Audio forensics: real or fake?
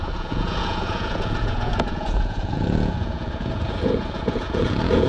fake